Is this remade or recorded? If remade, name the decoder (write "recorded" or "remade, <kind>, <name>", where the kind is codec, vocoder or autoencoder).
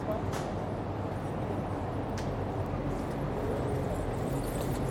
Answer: recorded